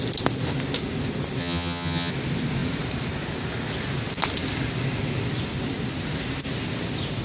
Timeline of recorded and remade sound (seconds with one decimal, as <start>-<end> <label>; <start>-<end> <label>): 0.0-1.4 recorded; 1.4-2.1 remade; 2.1-7.2 recorded